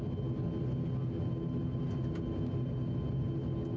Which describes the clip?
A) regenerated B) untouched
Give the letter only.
B